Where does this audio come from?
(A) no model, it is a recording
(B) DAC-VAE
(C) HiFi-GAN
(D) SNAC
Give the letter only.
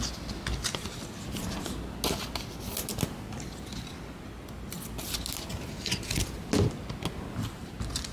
A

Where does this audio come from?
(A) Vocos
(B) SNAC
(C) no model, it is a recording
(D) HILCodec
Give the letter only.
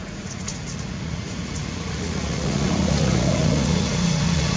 A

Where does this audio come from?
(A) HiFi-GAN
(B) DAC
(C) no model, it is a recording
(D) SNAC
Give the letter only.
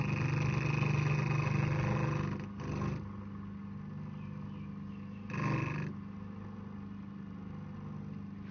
C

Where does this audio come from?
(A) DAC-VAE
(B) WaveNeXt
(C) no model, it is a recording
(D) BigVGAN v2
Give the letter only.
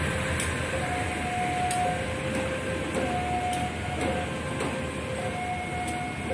C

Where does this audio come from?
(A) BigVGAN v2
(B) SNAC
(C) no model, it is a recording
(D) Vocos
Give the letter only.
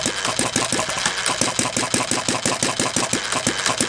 C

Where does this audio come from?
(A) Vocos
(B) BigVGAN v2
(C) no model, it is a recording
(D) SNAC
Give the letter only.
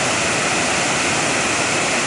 C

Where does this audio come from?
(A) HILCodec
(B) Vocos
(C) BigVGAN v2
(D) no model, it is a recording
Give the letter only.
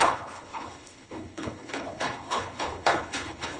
A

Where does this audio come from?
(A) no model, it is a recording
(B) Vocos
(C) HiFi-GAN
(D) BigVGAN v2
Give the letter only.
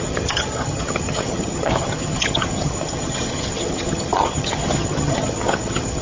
C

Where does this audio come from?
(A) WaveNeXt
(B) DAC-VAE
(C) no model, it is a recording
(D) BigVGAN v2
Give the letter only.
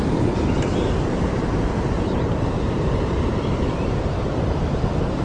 D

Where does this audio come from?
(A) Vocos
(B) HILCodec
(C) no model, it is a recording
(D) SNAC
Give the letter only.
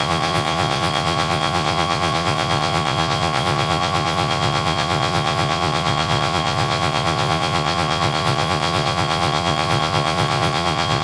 A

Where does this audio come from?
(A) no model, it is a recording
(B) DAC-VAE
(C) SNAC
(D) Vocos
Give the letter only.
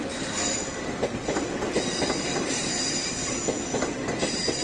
A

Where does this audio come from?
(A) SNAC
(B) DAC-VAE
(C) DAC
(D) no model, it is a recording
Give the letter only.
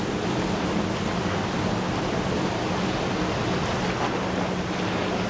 D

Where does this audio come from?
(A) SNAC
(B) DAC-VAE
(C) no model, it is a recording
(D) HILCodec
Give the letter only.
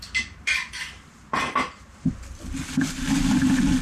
C